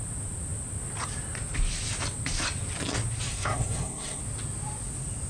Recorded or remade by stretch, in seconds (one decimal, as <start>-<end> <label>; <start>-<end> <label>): 0.0-3.3 recorded; 3.3-4.2 remade; 4.2-5.3 recorded